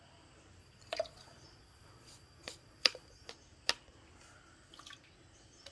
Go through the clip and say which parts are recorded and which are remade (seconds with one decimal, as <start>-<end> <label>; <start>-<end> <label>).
0.0-0.6 recorded; 0.6-3.3 remade; 3.3-5.7 recorded